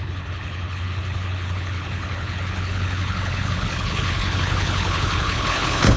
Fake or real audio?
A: fake